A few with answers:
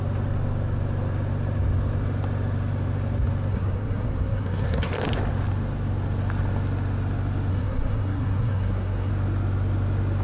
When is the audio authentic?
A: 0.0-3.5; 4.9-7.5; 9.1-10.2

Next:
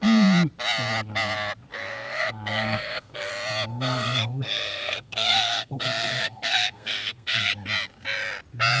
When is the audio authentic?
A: 0.0-1.7; 3.3-3.7; 7.5-8.8

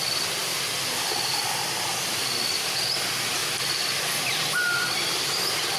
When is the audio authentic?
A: 0.0-5.8

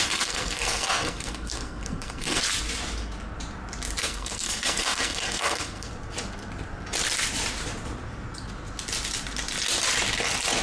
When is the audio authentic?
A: 2.4-4.0; 5.9-10.6

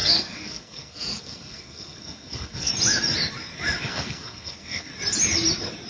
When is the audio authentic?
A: 2.7-3.8; 4.9-5.9

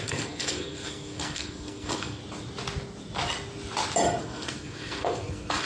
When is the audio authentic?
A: 2.2-4.2

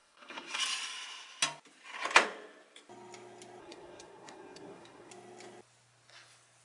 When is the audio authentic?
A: 0.6-3.6; 5.1-6.6